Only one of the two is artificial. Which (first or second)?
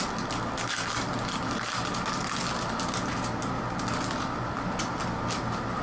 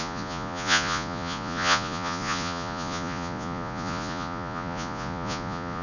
second